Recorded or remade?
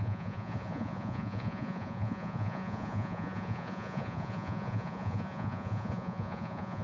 remade